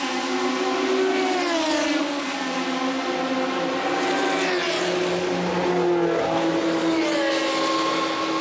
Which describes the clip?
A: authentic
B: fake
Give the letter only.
A